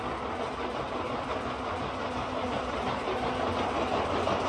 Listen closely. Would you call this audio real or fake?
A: real